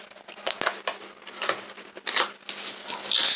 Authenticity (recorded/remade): recorded